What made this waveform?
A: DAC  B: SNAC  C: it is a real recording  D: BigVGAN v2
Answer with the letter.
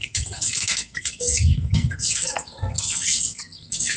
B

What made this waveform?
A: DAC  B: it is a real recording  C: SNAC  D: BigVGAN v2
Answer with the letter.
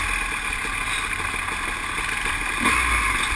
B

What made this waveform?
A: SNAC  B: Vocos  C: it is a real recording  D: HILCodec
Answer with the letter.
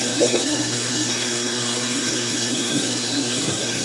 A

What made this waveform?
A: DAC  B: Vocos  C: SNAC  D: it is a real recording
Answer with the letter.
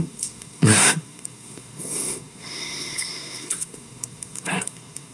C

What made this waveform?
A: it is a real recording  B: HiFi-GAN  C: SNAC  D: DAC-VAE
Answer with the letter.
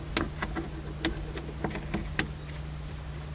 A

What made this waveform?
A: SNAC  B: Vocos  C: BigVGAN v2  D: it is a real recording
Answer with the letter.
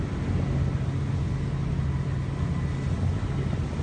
D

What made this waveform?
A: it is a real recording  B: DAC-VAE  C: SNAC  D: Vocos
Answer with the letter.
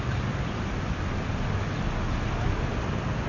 A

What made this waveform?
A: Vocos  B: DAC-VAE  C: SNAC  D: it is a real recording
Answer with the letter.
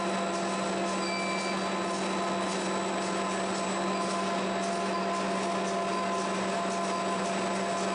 D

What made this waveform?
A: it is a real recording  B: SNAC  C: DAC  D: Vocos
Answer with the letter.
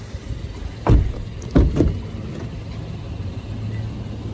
A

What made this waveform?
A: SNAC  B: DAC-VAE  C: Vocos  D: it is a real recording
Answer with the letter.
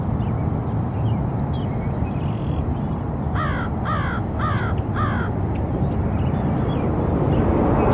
D